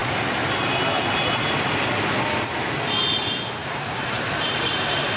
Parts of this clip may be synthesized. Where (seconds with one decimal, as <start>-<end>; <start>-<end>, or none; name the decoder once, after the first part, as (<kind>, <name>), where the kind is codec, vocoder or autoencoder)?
3.6-5.2 (vocoder, BigVGAN v2)